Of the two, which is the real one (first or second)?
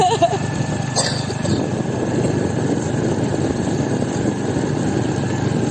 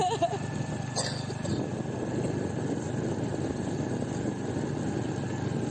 second